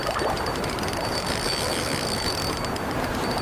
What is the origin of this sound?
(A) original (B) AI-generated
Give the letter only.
A